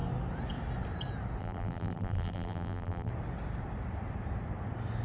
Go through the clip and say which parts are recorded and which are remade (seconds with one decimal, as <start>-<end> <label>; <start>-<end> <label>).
0.0-1.4 recorded; 1.4-3.1 remade; 3.1-5.0 recorded